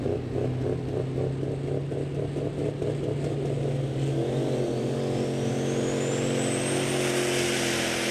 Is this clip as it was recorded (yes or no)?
yes